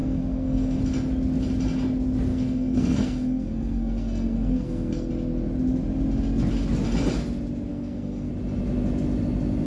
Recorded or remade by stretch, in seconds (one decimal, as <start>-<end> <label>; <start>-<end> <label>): 0.0-0.8 remade; 0.8-2.3 recorded; 2.3-5.1 remade; 5.1-7.7 recorded; 7.7-8.3 remade; 8.3-9.7 recorded